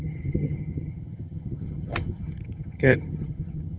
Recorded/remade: remade